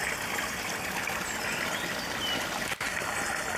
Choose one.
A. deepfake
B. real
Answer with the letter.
B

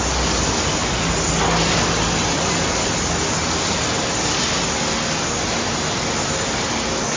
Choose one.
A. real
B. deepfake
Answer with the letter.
A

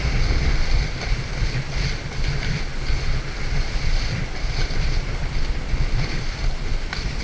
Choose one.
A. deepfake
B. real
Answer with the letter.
B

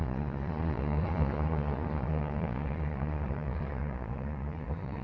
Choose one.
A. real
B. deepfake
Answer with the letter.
B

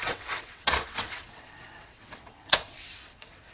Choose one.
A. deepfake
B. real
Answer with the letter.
A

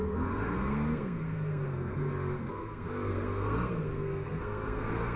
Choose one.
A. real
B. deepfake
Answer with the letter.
B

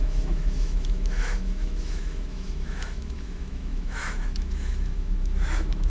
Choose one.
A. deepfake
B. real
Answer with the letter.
A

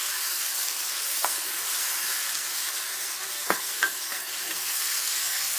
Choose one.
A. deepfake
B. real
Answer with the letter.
A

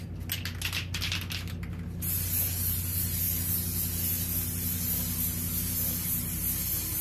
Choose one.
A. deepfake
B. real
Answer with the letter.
B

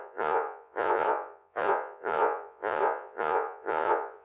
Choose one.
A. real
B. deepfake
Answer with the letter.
B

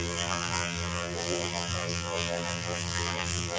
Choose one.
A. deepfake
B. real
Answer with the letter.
A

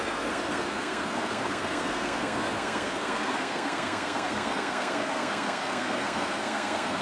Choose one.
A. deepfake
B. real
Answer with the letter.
A